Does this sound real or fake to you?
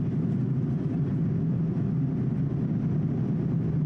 real